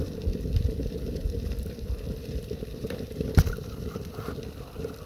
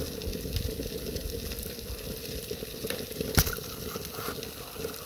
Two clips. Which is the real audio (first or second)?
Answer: second